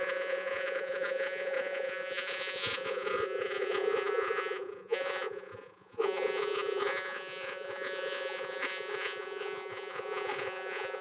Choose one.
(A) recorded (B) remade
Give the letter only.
B